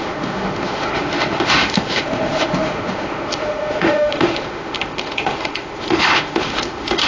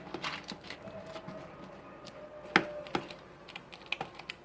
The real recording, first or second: second